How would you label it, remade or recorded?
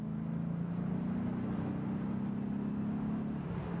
recorded